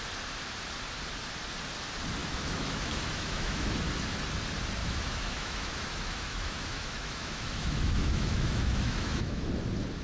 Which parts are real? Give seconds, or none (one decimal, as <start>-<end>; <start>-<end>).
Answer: 0.0-2.2; 3.7-4.8; 9.5-10.0